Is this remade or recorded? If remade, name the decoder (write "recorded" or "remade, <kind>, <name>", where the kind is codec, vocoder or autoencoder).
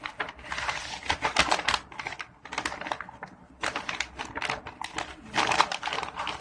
recorded